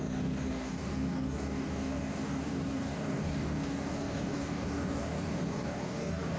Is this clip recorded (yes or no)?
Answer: no